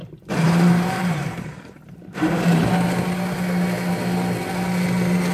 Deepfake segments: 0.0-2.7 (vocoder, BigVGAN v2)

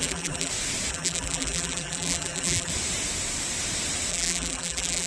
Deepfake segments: 0.0-0.5 (vocoder, BigVGAN v2); 0.9-2.7; 4.1-5.1

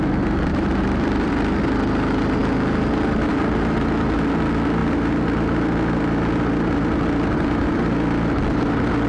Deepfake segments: 0.5-1.3 (vocoder, BigVGAN v2)

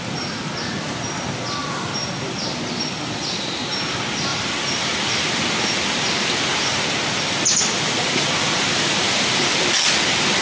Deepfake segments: 4.3-9.0 (vocoder, BigVGAN v2)

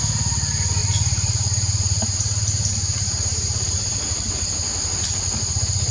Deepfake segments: 0.8-4.3 (vocoder, BigVGAN v2)

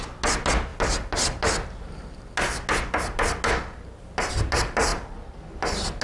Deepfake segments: 4.9-5.6 (vocoder, BigVGAN v2)